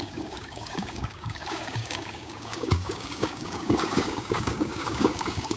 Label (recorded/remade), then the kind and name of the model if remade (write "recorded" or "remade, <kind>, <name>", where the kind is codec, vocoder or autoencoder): remade, codec, DAC